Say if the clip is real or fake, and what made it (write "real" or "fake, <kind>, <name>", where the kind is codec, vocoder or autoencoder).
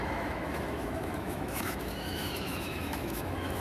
fake, autoencoder, DAC-VAE